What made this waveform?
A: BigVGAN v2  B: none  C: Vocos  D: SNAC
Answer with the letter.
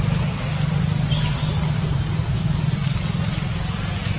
B